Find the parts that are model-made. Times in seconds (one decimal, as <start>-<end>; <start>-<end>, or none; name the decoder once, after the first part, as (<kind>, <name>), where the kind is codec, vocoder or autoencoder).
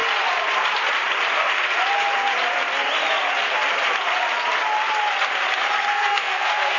5.9-6.8 (codec, SNAC)